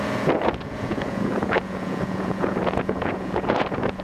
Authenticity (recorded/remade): remade